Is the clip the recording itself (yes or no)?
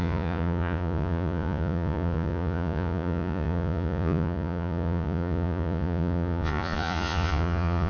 no